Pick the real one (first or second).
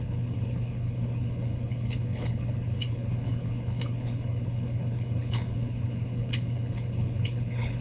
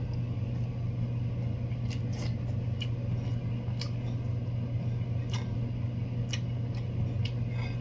second